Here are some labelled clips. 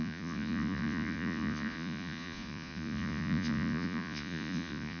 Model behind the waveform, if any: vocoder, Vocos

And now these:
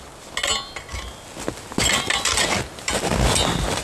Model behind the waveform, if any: none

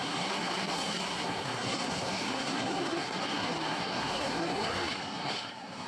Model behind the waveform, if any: codec, SNAC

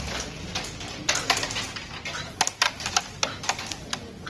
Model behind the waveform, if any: none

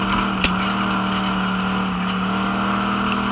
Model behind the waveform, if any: none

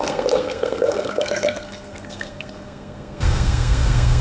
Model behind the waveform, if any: codec, SNAC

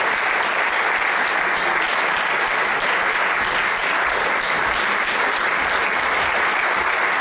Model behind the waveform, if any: none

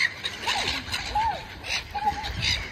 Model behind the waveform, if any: vocoder, BigVGAN v2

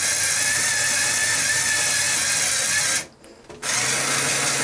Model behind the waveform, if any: none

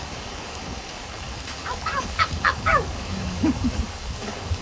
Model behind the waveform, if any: codec, DAC